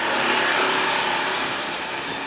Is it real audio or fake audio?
real